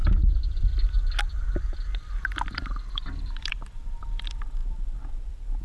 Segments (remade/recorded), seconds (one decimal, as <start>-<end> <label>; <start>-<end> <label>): 0.0-2.1 recorded; 2.1-5.6 remade